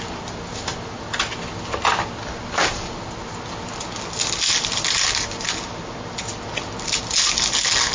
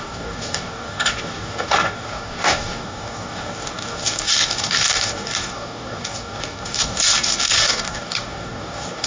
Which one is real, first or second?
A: first